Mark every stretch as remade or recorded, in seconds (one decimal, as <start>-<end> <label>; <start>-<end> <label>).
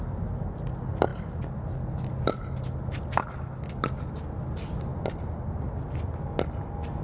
0.0-7.0 recorded